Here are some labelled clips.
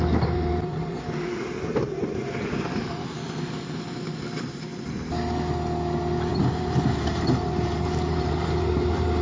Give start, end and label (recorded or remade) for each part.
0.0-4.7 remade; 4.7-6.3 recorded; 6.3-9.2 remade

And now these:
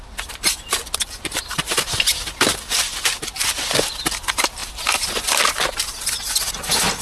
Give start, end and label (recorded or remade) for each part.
0.0-7.0 recorded

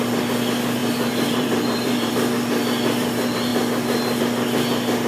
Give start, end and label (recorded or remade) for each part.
0.0-0.8 recorded; 0.8-2.1 remade; 2.1-5.1 recorded

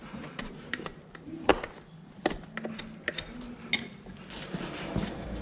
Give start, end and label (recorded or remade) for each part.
0.0-1.5 remade; 1.5-4.7 recorded; 4.7-5.4 remade

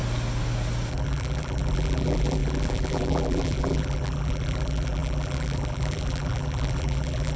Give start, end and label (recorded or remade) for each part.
0.0-0.9 recorded; 0.9-7.4 remade